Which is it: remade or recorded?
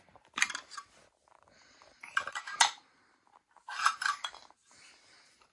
remade